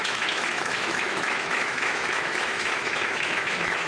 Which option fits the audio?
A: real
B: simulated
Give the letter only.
B